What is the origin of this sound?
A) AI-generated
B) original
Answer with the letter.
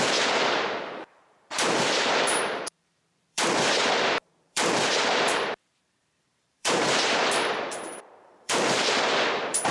A